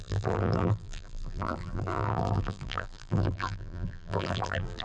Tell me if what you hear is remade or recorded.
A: remade